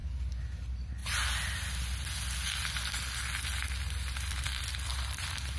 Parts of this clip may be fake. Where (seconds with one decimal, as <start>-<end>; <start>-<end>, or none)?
0.6-1.0; 4.4-4.9